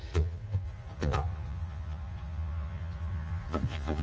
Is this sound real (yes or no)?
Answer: no